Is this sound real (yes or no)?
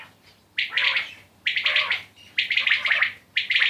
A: yes